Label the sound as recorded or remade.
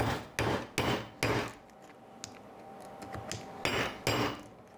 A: recorded